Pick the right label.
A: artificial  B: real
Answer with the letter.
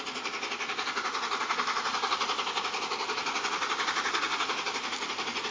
B